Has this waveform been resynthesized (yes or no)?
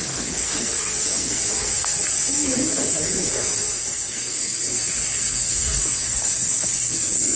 yes